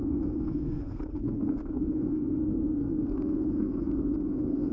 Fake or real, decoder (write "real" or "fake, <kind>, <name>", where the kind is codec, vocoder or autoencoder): fake, codec, SNAC